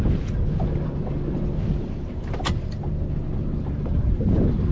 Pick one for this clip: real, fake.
real